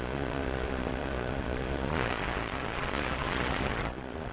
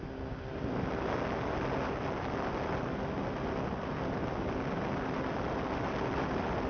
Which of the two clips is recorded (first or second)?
second